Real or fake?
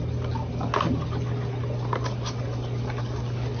real